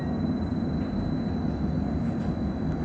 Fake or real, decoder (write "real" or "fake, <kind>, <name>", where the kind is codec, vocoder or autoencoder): real